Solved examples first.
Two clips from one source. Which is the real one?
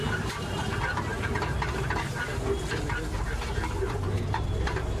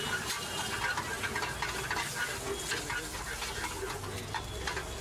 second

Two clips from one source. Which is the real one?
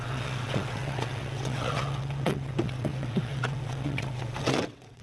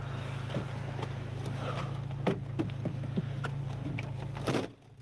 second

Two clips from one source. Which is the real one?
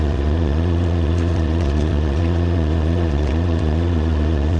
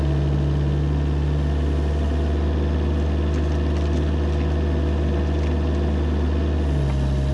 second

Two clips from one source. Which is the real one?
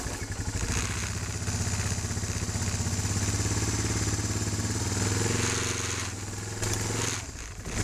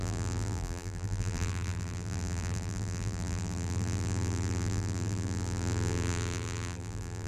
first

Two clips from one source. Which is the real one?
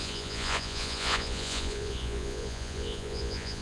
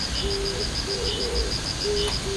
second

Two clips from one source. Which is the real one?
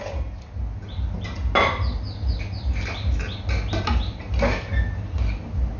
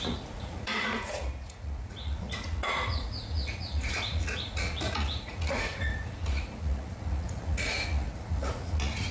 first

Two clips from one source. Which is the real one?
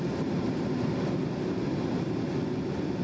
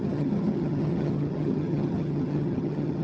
first